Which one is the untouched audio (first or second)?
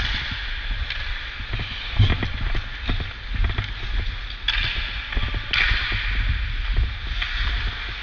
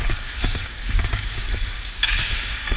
first